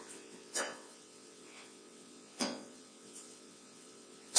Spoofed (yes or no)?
yes